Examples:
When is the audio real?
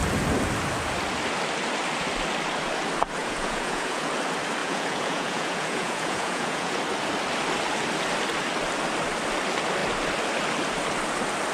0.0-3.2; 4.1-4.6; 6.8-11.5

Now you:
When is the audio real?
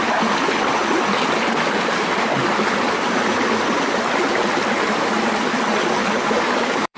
0.0-6.0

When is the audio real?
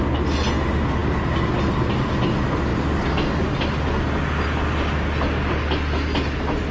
0.0-6.7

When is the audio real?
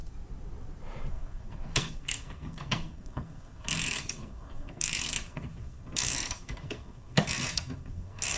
0.0-1.1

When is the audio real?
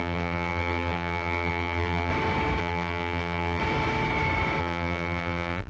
2.1-2.6; 3.6-4.6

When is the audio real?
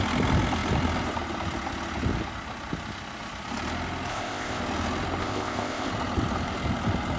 0.0-4.1; 4.6-5.2; 5.9-7.2